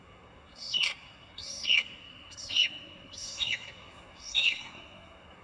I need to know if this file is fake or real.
fake